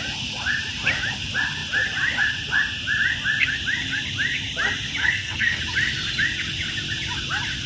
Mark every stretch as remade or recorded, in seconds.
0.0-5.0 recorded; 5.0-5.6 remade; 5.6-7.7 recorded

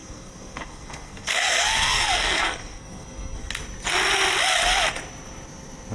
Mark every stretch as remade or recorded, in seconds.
0.0-3.5 remade; 3.5-5.9 recorded

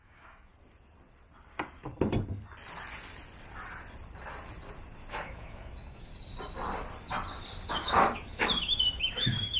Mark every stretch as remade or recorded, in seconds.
0.0-0.5 remade; 0.5-5.1 recorded; 5.1-6.1 remade; 6.1-7.7 recorded; 7.7-9.6 remade

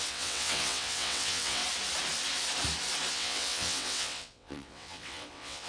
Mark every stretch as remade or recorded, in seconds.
0.0-1.6 remade; 1.6-3.1 recorded; 3.1-5.7 remade